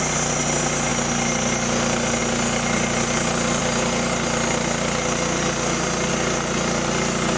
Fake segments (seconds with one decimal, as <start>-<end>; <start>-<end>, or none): none